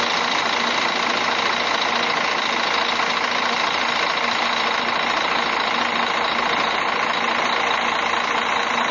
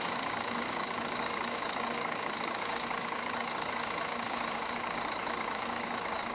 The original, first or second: first